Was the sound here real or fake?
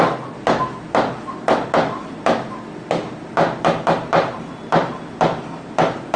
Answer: real